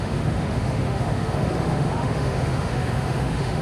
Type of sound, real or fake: fake